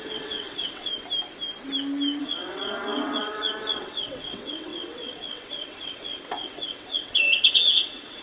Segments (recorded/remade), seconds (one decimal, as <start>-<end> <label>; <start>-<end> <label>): 0.0-0.9 remade; 0.9-2.2 recorded; 2.2-8.2 remade